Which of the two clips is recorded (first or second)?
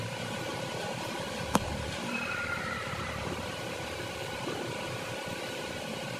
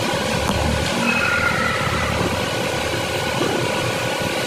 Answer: second